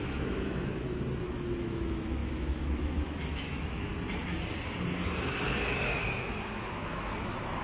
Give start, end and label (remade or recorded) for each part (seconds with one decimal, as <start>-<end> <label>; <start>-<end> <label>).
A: 0.0-0.7 remade; 0.7-1.2 recorded; 1.2-3.9 remade; 3.9-5.7 recorded; 5.7-7.6 remade